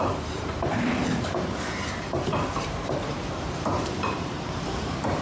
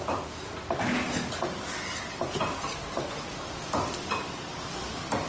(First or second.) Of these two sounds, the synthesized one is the first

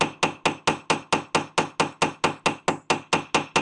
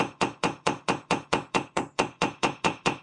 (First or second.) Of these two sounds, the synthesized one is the second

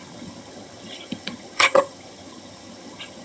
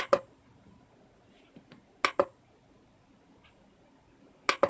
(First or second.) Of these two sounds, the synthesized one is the first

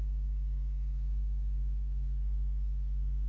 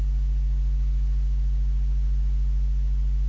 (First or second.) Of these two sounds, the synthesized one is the first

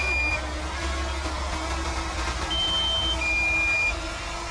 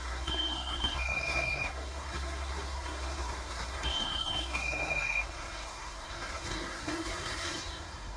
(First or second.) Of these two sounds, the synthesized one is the second